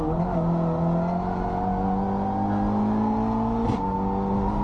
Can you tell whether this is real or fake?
real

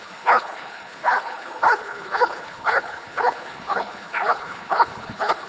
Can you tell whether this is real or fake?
fake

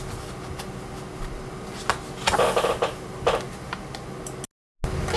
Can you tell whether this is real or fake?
real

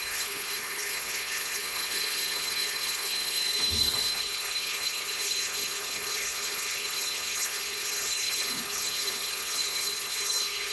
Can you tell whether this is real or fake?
fake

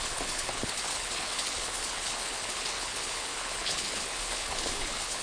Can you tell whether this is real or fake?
fake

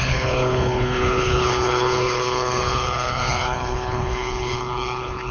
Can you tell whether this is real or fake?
fake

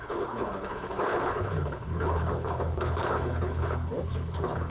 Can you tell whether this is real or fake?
fake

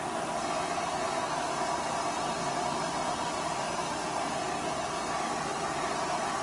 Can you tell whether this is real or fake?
real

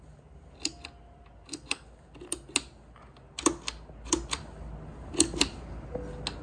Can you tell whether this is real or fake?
real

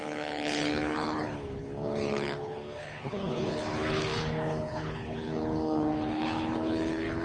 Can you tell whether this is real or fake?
fake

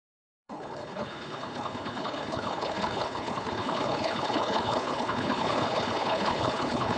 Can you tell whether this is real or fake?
fake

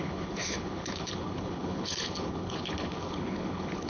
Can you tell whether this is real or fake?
fake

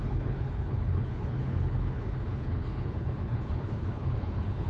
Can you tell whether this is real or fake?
fake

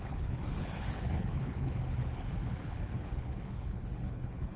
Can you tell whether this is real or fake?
fake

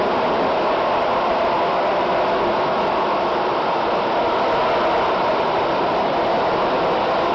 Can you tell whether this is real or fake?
real